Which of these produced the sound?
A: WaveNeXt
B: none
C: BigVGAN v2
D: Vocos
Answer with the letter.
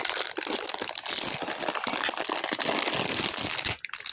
B